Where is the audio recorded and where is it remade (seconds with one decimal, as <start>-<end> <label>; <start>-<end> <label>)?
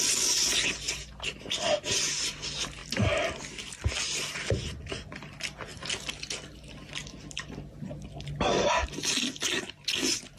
0.0-10.4 recorded